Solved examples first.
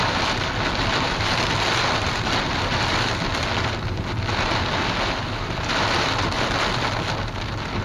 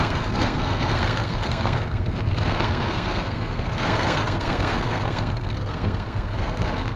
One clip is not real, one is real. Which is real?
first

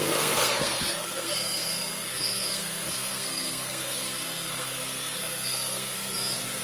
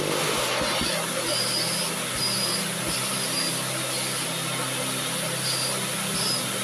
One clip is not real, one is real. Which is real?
second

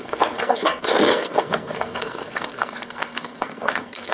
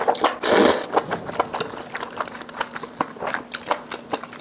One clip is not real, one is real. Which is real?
second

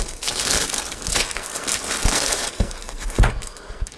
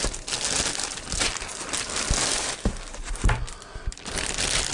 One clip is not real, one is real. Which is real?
second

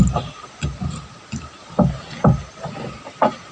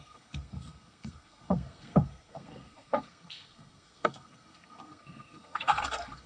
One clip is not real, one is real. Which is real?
first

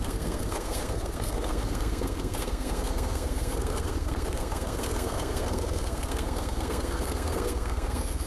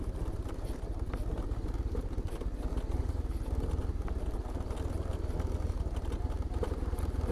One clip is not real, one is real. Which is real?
second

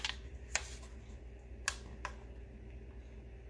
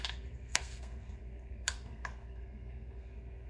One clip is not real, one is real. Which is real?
first